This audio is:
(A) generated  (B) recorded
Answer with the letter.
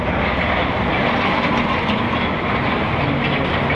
B